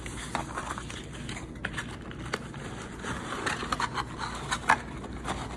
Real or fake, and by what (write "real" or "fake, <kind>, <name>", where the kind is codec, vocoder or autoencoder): real